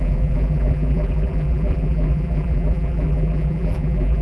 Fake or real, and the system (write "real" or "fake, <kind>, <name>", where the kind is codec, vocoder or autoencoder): fake, vocoder, BigVGAN v2